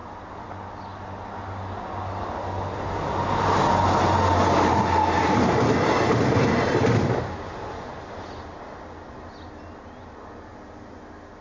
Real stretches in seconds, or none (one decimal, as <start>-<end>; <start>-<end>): 0.0-11.4

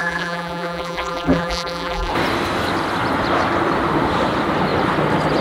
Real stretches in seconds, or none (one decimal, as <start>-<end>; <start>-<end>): 2.1-5.4

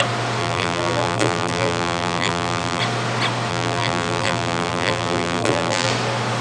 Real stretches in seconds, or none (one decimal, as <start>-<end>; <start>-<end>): 0.0-0.4; 2.8-3.5; 5.9-6.4

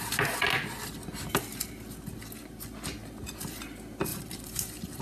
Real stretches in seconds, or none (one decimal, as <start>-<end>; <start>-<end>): 0.0-4.1